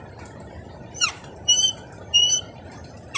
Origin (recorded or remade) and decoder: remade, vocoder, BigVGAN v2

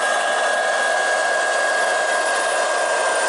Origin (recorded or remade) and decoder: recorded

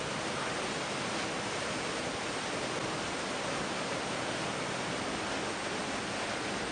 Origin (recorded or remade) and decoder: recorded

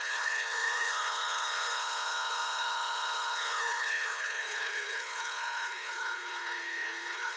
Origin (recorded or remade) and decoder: remade, codec, HILCodec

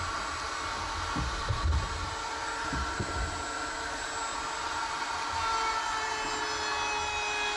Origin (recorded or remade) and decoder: recorded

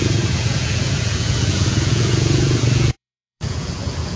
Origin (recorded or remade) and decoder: remade, vocoder, Vocos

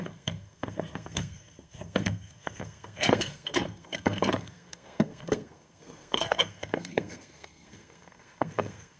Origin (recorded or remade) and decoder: remade, codec, SNAC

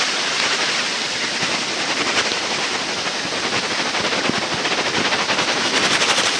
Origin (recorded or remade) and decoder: recorded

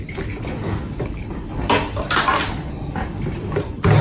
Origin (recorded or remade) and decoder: recorded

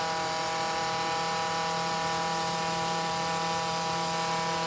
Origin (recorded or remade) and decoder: recorded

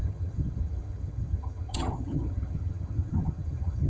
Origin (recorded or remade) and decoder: remade, vocoder, HiFi-GAN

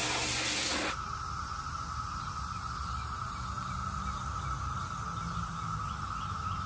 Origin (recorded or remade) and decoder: recorded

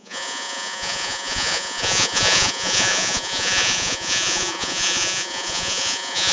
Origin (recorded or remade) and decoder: remade, vocoder, Vocos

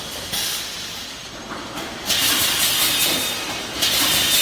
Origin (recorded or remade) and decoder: recorded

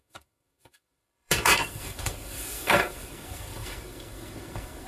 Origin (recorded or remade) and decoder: remade, codec, SNAC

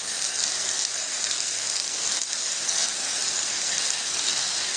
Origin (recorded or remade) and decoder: remade, codec, SNAC